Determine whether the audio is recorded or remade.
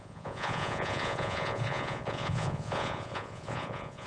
remade